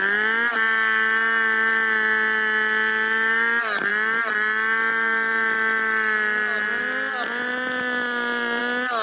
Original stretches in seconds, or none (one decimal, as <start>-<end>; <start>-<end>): 0.0-9.0